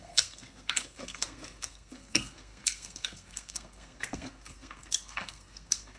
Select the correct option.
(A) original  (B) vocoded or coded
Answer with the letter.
B